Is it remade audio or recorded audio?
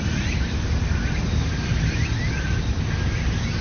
recorded